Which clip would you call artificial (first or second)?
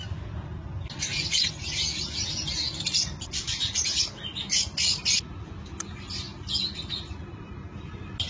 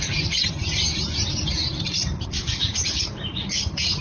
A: second